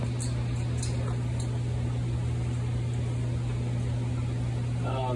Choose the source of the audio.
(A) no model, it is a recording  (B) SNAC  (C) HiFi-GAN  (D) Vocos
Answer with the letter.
A